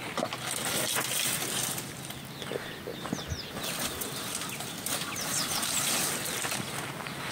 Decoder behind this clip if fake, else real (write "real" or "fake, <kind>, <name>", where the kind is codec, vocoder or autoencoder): real